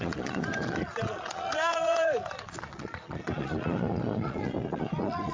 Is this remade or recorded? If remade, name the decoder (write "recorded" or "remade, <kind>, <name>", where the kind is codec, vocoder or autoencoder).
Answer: remade, vocoder, Vocos